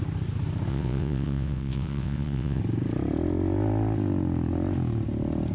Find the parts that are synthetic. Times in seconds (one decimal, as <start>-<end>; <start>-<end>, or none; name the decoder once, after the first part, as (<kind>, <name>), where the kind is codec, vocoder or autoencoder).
0.7-2.6 (vocoder, WaveNeXt)